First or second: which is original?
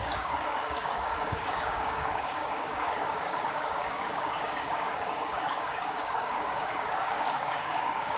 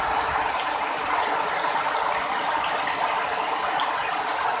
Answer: second